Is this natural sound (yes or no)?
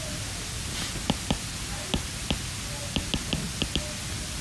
yes